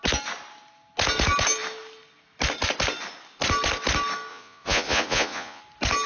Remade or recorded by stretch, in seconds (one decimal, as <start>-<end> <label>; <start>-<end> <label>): 0.0-4.3 recorded; 4.3-5.6 remade; 5.6-6.1 recorded